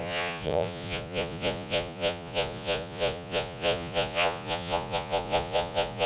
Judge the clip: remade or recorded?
remade